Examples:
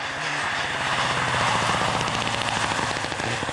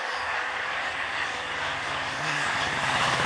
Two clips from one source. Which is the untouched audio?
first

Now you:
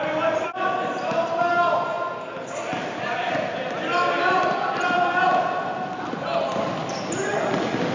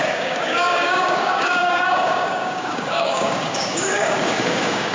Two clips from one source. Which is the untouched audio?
first